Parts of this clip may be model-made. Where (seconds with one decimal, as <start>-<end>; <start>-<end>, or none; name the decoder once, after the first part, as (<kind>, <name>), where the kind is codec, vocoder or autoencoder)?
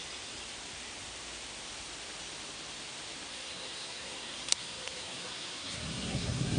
3.3-6.6 (codec, SNAC)